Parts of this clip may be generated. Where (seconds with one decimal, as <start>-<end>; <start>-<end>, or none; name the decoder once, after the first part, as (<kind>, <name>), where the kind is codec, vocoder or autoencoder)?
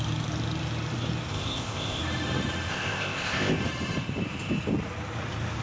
1.3-2.0 (codec, ZipCodec); 2.7-3.6